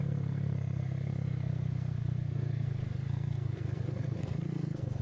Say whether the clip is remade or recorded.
remade